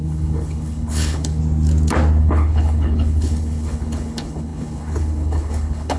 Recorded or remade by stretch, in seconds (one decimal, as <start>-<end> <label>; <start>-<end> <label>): 0.0-1.4 remade; 1.4-2.2 recorded; 2.2-6.0 remade